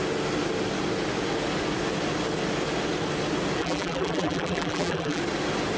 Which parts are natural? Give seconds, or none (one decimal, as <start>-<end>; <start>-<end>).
0.0-3.6; 5.2-5.8